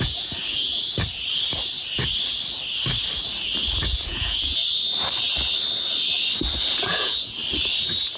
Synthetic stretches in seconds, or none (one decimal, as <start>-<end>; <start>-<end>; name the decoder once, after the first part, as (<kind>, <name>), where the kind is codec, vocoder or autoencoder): 0.0-0.7 (vocoder, Vocos); 3.8-4.6; 6.8-7.4